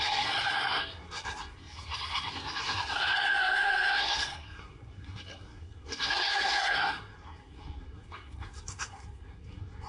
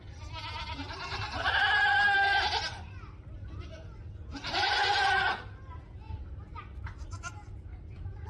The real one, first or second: second